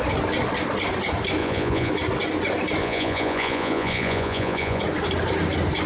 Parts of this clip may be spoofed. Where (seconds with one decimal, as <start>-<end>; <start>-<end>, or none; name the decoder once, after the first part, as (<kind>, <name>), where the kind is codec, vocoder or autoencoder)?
1.4-1.9 (vocoder, Vocos); 2.8-4.8